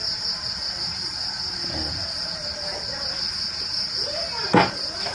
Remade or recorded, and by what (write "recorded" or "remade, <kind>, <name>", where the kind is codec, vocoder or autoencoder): recorded